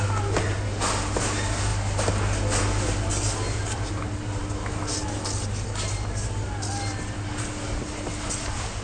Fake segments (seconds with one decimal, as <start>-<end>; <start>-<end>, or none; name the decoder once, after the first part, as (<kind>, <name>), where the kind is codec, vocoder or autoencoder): none